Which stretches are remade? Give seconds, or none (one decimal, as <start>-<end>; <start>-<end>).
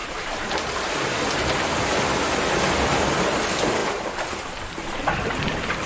none